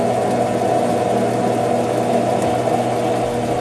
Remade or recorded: recorded